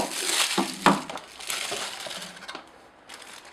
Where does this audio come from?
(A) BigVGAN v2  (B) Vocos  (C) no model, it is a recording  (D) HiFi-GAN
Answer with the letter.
C